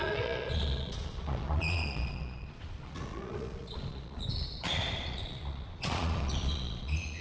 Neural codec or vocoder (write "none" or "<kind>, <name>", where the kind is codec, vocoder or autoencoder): vocoder, Vocos